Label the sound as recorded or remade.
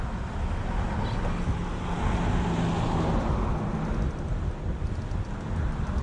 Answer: recorded